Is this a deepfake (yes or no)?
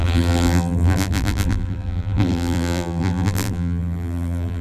yes